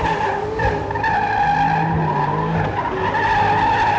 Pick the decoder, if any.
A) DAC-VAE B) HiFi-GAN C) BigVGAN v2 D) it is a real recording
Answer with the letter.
D